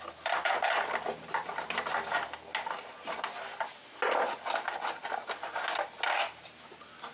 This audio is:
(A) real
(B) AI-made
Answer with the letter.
A